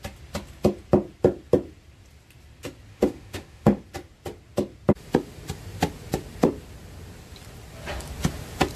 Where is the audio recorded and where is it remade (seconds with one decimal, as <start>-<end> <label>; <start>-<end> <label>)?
0.0-2.9 recorded; 2.9-3.8 remade; 3.8-8.8 recorded